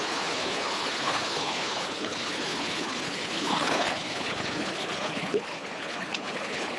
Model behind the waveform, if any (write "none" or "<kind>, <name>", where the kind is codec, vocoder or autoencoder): codec, HILCodec